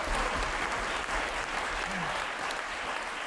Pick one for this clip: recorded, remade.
recorded